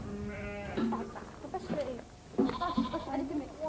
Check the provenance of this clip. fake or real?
real